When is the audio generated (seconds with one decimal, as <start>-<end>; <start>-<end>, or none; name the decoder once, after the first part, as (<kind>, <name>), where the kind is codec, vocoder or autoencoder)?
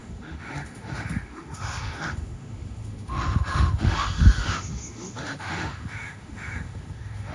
0.0-7.3 (autoencoder, DAC-VAE)